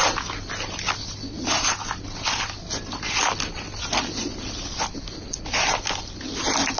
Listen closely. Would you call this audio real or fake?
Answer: real